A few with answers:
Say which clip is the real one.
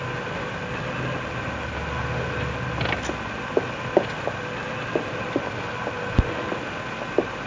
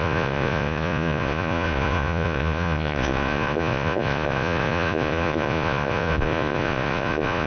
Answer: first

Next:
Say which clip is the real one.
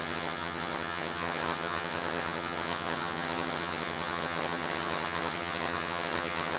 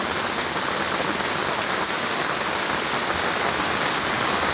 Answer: second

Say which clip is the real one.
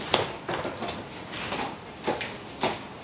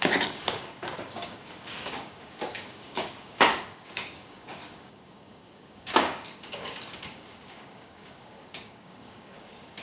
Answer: first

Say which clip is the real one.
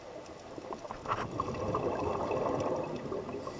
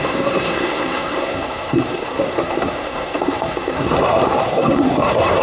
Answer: first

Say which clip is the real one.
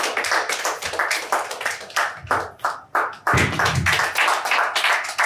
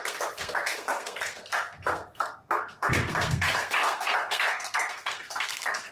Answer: first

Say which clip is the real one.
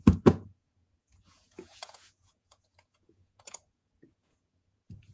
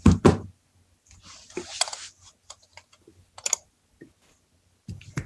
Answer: second